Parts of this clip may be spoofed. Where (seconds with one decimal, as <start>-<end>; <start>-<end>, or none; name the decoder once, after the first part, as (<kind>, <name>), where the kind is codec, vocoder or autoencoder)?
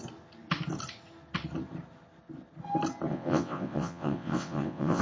3.1-5.0 (vocoder, WaveNeXt)